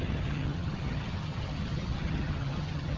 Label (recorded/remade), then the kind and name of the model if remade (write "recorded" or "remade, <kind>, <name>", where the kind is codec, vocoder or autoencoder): remade, vocoder, HiFi-GAN